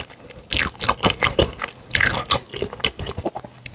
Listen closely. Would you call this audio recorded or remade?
recorded